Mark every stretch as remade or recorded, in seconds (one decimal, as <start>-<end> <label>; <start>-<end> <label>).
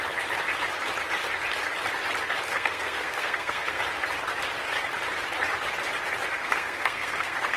0.0-2.5 recorded; 2.5-3.8 remade; 3.8-6.4 recorded; 6.4-7.6 remade